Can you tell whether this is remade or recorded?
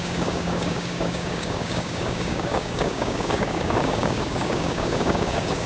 remade